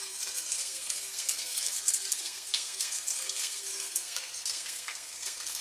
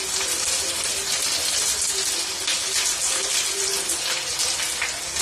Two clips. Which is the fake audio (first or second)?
first